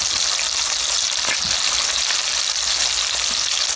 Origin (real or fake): real